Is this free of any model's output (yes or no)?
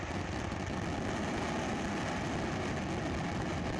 yes